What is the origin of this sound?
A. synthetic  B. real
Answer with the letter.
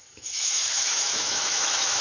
A